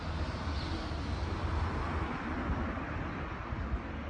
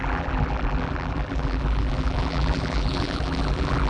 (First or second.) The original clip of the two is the first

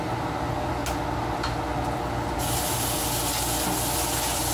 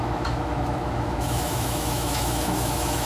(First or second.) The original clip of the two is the first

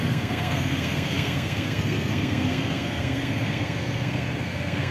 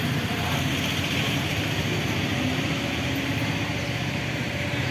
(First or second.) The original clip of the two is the second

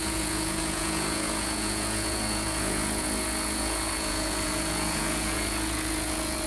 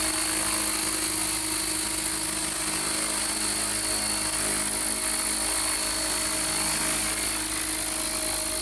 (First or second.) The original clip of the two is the second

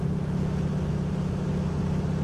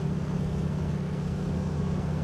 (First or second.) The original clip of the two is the first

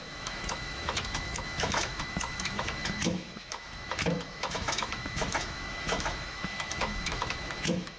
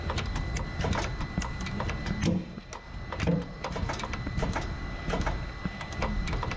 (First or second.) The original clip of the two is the second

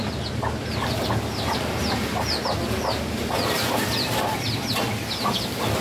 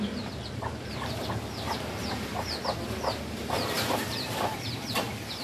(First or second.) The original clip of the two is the first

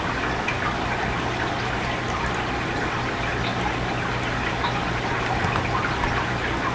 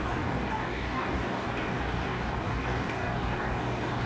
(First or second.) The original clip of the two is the first